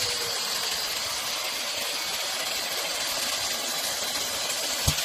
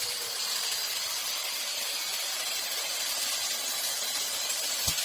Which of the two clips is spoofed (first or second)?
second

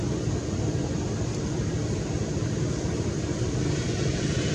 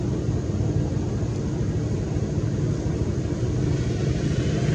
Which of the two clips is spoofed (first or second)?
first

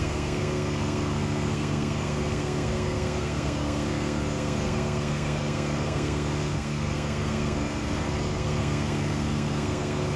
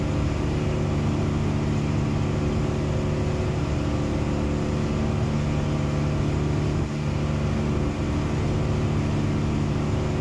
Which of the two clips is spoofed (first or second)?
first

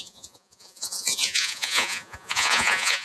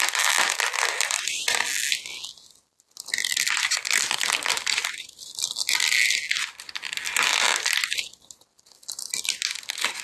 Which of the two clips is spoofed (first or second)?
first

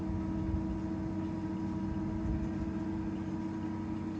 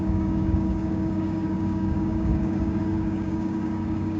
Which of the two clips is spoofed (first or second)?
second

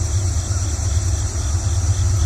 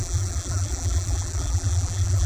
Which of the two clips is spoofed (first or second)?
second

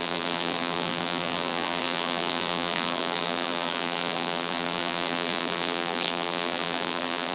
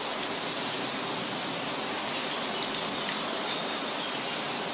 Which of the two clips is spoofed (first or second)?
first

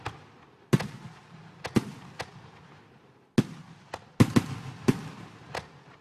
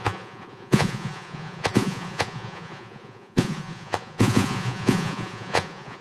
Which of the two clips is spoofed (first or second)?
second